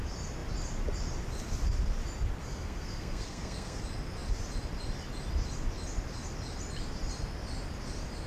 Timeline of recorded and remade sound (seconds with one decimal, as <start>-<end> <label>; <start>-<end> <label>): 0.0-2.4 recorded; 2.4-3.8 remade; 3.8-8.3 recorded

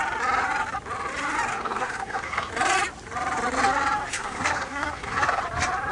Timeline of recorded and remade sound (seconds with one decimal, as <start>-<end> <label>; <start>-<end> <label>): 0.0-1.5 recorded; 1.5-2.5 remade; 2.5-4.1 recorded; 4.1-5.4 remade; 5.4-5.9 recorded

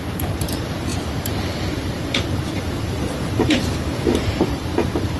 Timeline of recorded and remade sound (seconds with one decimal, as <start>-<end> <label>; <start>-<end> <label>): 0.0-5.2 remade